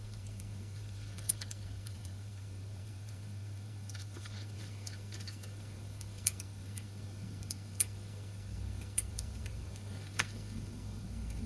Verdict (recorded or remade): remade